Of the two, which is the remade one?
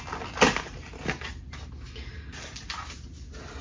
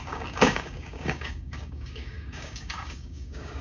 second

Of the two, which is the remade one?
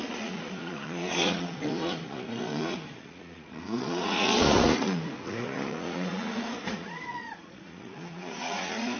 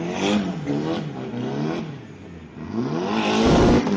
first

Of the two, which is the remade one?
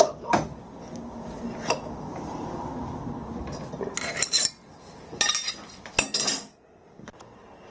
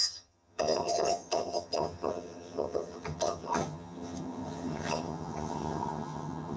second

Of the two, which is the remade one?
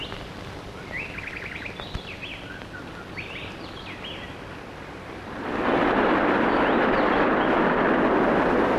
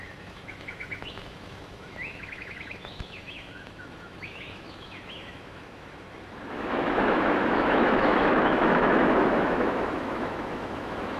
second